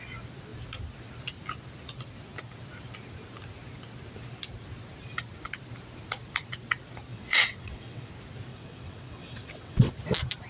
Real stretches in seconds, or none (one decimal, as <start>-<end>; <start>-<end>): 0.0-7.1; 8.1-8.5; 9.9-10.5